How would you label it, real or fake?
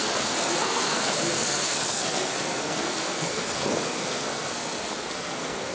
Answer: fake